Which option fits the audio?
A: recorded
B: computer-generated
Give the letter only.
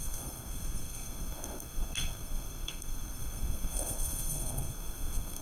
B